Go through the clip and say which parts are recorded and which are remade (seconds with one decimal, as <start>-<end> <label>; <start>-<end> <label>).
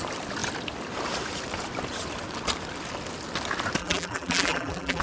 0.0-3.8 recorded; 3.8-5.0 remade